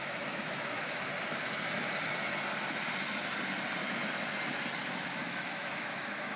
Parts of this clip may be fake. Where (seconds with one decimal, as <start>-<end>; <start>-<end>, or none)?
0.0-1.1; 4.9-6.4